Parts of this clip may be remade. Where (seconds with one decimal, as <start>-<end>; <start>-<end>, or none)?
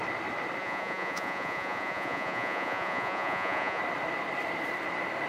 0.6-3.8